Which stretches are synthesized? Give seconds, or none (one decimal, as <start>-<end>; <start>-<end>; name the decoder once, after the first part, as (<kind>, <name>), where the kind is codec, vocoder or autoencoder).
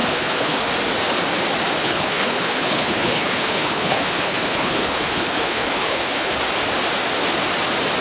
0.0-0.7 (codec, HILCodec); 1.8-6.3